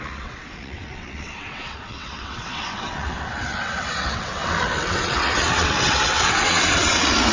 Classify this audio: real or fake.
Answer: fake